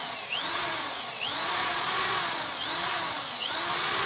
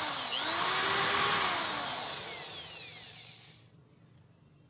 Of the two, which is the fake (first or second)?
first